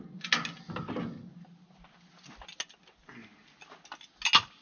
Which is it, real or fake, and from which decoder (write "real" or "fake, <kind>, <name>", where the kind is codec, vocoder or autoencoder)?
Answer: real